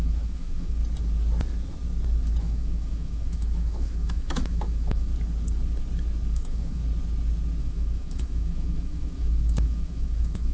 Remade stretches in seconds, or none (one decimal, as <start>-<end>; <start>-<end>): 0.0-0.8; 2.4-5.1; 6.3-6.8; 7.6-10.5